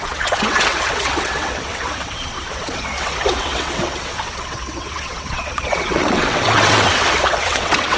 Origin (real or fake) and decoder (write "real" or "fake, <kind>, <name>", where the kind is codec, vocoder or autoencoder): fake, vocoder, WaveNeXt